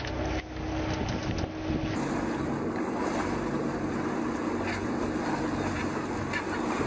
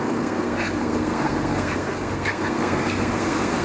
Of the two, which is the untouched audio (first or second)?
first